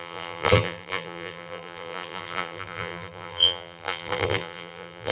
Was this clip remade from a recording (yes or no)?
yes